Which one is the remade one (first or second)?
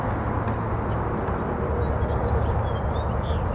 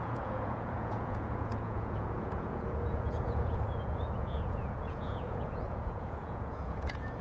second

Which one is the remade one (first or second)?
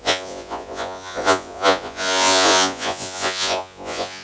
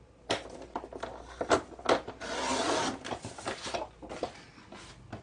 first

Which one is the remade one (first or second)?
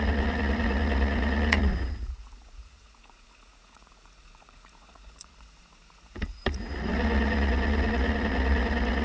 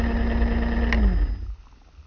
first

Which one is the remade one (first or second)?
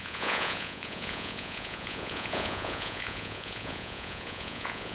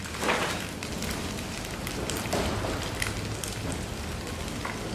first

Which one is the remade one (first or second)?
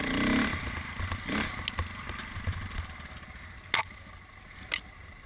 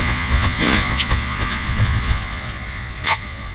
second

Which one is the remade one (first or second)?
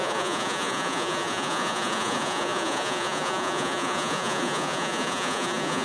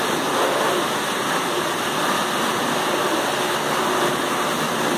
first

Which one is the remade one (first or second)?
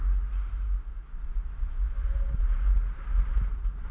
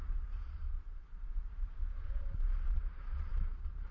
second